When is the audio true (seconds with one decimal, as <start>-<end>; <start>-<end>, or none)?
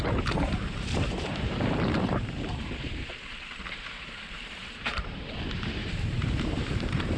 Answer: none